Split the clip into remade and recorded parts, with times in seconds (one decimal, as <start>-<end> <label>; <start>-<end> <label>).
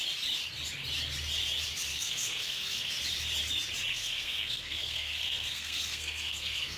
0.0-1.9 recorded; 1.9-2.9 remade; 2.9-3.9 recorded; 3.9-6.8 remade